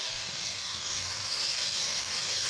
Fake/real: fake